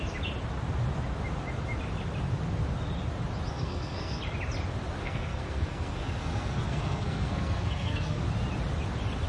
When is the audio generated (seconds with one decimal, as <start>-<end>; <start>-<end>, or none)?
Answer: 3.5-4.2; 5.0-8.2